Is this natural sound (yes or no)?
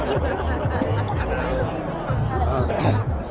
yes